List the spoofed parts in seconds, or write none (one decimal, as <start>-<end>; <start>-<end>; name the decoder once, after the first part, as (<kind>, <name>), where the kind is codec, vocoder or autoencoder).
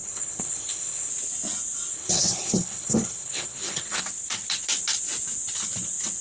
0.0-1.1 (codec, HILCodec); 1.9-4.0